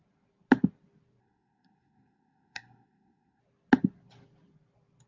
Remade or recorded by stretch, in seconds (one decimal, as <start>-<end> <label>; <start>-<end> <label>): 0.0-1.2 recorded; 1.2-3.4 remade; 3.4-5.1 recorded